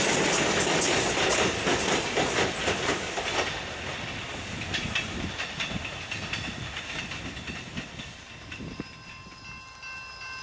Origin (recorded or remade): recorded